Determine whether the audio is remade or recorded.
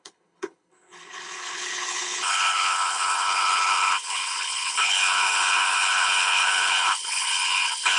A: remade